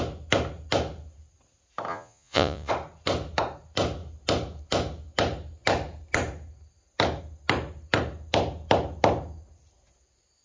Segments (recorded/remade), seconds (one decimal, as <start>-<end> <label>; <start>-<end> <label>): 0.0-1.9 recorded; 1.9-2.7 remade; 2.7-10.4 recorded